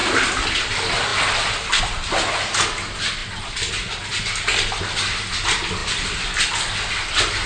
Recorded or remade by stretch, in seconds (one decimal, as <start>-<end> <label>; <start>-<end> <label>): 0.0-7.5 recorded